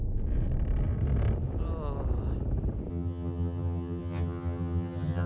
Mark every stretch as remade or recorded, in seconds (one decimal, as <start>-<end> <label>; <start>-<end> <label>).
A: 0.0-2.9 recorded; 2.9-5.3 remade